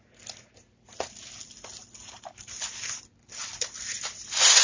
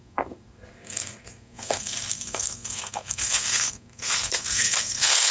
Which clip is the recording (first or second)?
first